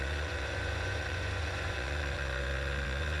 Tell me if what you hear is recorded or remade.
remade